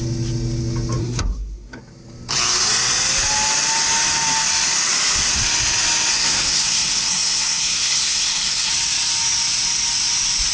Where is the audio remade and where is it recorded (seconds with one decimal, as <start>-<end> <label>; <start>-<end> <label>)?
0.0-1.0 recorded; 1.0-1.8 remade; 1.8-6.1 recorded; 6.1-8.7 remade; 8.7-10.5 recorded